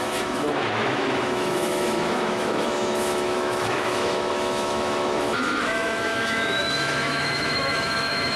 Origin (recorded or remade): remade